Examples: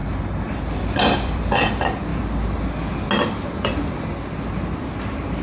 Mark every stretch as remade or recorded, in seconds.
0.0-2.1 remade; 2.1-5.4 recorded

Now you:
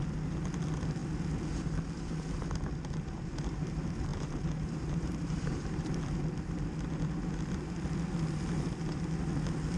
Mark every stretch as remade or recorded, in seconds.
0.0-4.1 recorded; 4.1-6.0 remade; 6.0-9.8 recorded

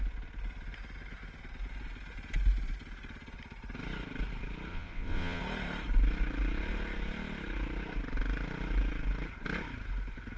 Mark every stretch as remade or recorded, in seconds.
0.0-4.7 recorded; 4.7-5.4 remade; 5.4-10.4 recorded

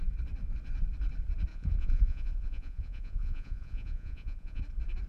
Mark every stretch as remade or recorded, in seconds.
0.0-1.5 recorded; 1.5-4.6 remade; 4.6-5.1 recorded

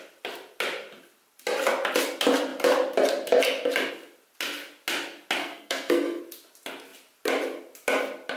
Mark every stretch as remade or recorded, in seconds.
0.0-5.4 recorded; 5.4-6.2 remade; 6.2-8.4 recorded

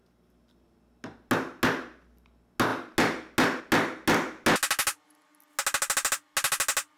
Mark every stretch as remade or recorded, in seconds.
0.0-7.0 recorded